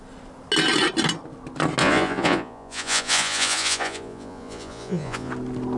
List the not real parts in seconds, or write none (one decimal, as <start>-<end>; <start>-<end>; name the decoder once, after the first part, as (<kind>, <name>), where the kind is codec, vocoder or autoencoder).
1.8-5.3 (vocoder, Vocos)